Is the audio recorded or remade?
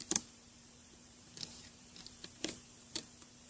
remade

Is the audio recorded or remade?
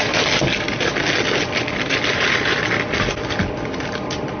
recorded